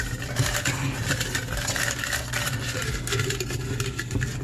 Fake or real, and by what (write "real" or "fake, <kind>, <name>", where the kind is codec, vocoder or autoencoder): real